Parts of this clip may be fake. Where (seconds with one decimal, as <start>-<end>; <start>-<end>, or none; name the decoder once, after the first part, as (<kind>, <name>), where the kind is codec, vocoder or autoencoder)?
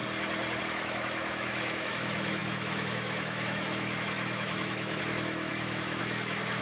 0.6-6.6 (autoencoder, DAC-VAE)